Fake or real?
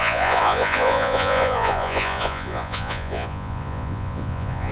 fake